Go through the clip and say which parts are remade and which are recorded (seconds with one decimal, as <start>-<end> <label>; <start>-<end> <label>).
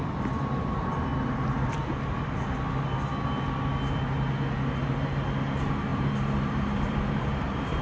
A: 0.0-5.9 recorded; 5.9-7.8 remade